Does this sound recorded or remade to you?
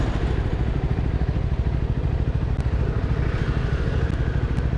recorded